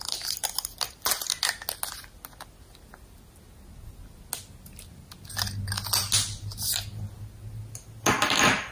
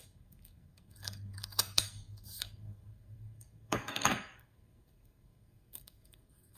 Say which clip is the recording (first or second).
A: first